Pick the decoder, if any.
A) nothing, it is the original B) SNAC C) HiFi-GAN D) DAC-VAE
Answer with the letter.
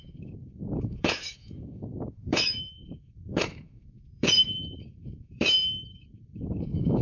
D